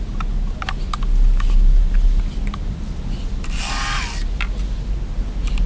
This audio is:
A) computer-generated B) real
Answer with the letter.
B